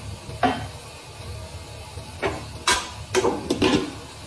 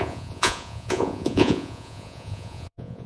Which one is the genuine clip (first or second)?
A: first